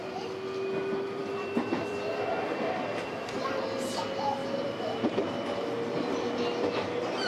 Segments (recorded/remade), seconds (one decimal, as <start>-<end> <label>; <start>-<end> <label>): 0.0-1.2 recorded; 1.2-2.3 remade; 2.3-4.4 recorded; 4.4-5.0 remade; 5.0-7.3 recorded